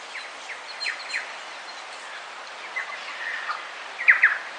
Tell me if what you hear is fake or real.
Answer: real